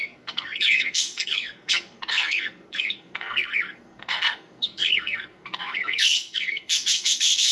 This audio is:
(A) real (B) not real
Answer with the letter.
B